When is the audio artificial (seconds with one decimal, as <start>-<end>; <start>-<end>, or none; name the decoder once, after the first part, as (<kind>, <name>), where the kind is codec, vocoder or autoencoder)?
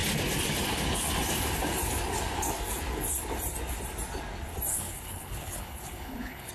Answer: 4.7-6.5 (codec, HILCodec)